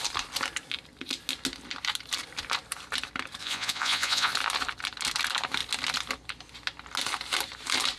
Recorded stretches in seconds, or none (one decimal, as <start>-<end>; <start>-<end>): 0.0-3.4; 4.3-8.0

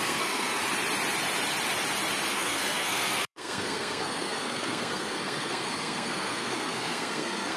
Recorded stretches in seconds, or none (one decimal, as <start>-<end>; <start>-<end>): 0.6-2.3

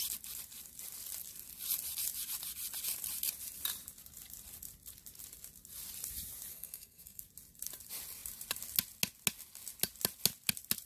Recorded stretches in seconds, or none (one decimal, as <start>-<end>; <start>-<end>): 0.0-6.5; 7.2-10.9

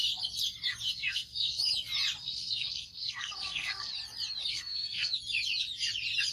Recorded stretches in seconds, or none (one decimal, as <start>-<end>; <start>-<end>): 0.0-0.9; 1.6-2.2; 3.9-4.5; 5.1-6.3

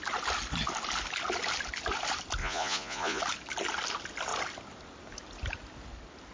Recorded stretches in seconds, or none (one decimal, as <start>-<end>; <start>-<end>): 0.0-2.4; 3.2-6.3

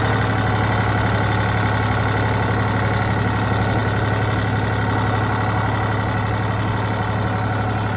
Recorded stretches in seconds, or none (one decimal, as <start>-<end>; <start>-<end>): 0.0-8.0

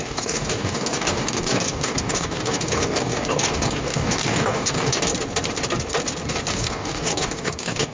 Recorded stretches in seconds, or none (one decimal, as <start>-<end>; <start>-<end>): 5.1-6.5

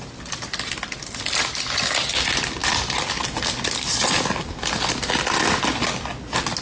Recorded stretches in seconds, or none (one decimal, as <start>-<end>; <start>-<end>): 0.0-6.6